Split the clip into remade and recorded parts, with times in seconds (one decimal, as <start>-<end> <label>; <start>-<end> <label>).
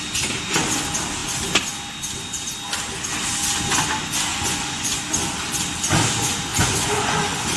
0.0-4.3 recorded; 4.3-5.0 remade; 5.0-6.5 recorded; 6.5-7.6 remade